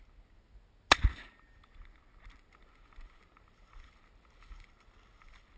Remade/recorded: recorded